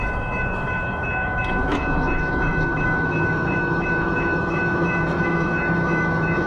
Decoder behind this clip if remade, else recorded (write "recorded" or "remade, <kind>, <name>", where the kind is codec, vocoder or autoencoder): remade, autoencoder, DAC-VAE